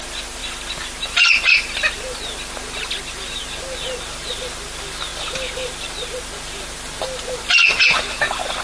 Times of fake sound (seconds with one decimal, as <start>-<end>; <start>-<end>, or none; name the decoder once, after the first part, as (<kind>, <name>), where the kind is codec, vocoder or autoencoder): none